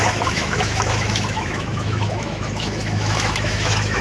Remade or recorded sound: remade